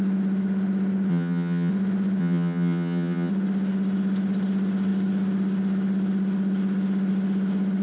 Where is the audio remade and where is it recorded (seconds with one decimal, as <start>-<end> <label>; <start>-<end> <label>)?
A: 0.0-1.1 recorded; 1.1-1.7 remade; 1.7-2.2 recorded; 2.2-3.3 remade; 3.3-7.8 recorded